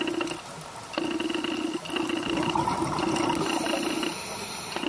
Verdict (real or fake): real